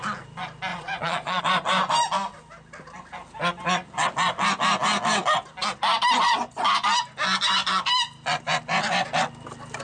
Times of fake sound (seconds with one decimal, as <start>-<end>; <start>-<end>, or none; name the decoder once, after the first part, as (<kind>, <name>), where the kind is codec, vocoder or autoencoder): 0.7-1.4 (vocoder, Vocos)